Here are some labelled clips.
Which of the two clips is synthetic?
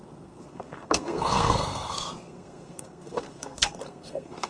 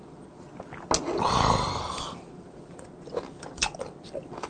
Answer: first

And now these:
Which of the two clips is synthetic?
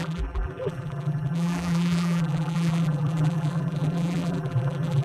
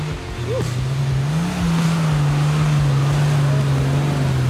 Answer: first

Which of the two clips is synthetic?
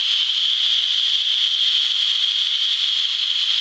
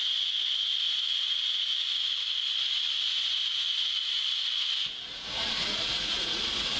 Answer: second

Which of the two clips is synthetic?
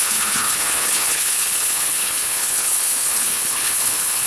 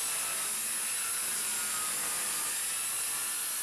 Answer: first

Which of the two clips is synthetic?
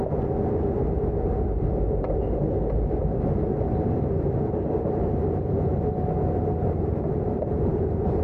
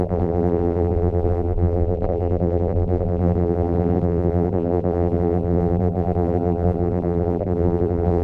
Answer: second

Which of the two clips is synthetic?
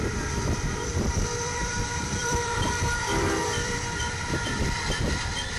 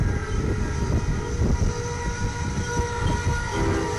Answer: first